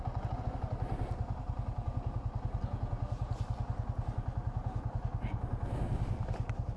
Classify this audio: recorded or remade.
recorded